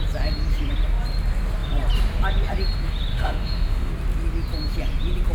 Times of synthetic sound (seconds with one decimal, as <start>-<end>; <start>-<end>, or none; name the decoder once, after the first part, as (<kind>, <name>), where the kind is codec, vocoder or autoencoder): 3.1-3.9 (autoencoder, DAC-VAE)